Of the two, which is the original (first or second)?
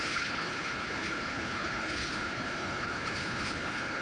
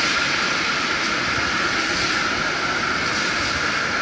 second